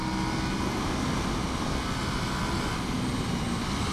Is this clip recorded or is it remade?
recorded